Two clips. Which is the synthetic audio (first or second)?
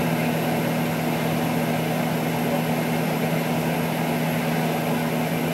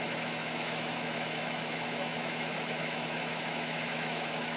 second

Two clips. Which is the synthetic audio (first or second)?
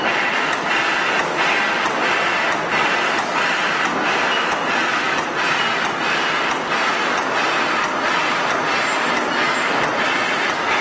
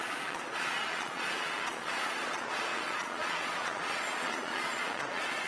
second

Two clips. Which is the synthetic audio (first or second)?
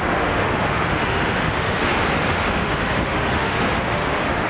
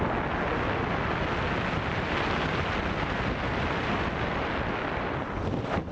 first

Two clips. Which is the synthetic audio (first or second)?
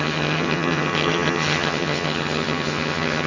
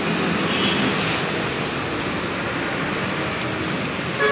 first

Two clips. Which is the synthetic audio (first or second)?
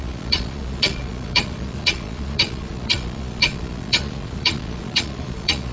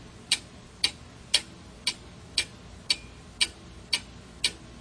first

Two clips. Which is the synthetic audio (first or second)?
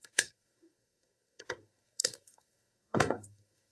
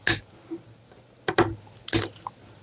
first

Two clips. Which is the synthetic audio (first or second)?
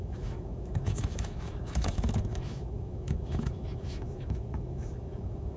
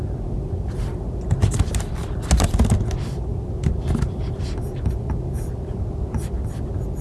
first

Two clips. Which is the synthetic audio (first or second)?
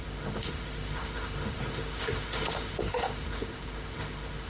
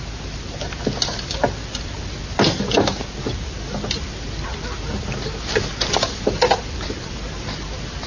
first